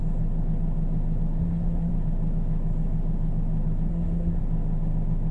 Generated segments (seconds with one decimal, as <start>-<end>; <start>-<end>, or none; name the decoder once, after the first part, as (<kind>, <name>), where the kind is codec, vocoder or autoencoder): 1.4-1.9 (codec, SNAC); 3.9-4.4